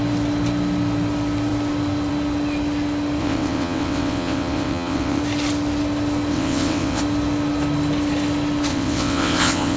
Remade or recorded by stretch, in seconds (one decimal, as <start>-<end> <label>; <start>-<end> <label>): 0.0-3.2 recorded; 3.2-5.2 remade; 5.2-6.3 recorded; 6.3-7.0 remade; 7.0-8.7 recorded; 8.7-9.8 remade